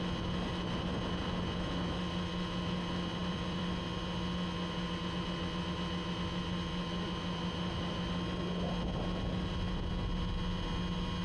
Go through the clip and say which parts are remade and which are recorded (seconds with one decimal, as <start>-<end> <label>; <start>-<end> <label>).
0.0-3.2 recorded; 3.2-3.8 remade; 3.8-11.2 recorded